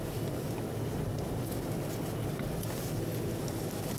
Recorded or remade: recorded